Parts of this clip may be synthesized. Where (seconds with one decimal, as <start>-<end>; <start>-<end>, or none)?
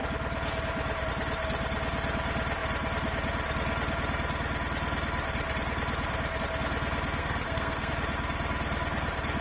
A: 7.2-7.9